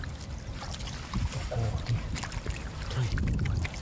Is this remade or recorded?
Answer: recorded